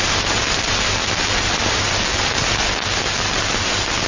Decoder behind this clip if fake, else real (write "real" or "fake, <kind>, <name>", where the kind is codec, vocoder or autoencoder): real